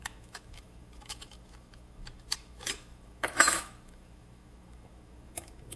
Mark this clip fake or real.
fake